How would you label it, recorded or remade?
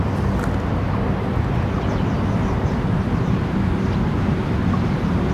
recorded